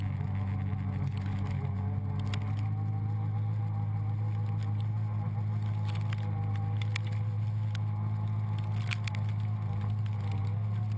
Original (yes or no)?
yes